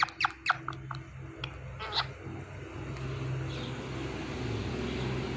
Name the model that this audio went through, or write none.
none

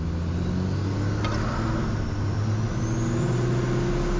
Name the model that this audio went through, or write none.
none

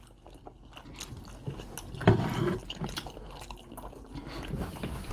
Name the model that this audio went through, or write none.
none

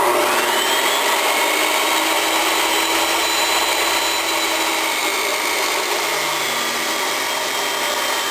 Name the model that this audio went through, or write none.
vocoder, BigVGAN v2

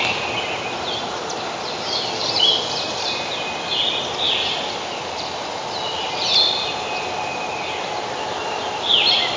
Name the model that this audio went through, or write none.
none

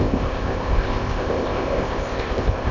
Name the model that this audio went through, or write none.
codec, ZipCodec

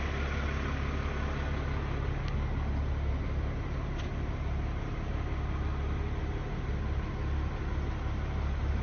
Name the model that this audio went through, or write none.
none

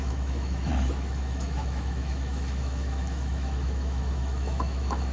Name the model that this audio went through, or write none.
autoencoder, DAC-VAE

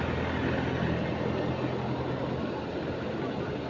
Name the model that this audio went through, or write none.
none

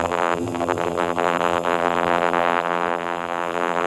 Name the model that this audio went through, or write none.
vocoder, BigVGAN v2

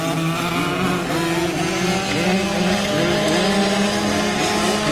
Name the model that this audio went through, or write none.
none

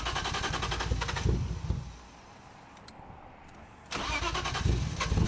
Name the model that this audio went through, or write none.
none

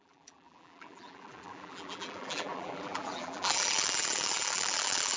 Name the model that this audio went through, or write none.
vocoder, BigVGAN v2